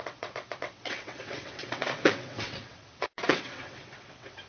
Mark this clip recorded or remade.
remade